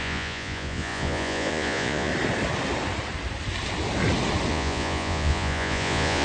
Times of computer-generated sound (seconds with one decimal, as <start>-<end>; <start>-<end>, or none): 0.0-2.1; 4.5-6.2